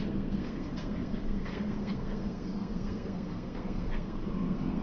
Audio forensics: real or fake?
fake